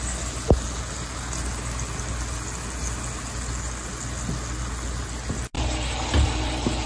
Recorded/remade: recorded